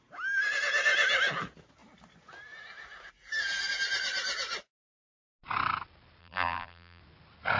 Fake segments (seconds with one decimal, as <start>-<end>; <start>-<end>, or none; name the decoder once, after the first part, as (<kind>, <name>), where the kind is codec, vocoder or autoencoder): 6.2-7.0 (vocoder, BigVGAN v2)